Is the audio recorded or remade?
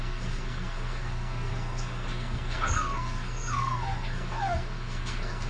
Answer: remade